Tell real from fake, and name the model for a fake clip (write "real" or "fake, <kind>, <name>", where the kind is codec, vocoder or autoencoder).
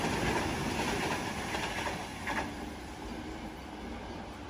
real